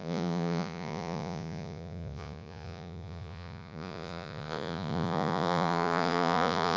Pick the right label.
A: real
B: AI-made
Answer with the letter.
B